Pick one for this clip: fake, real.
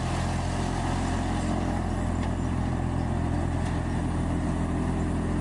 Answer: real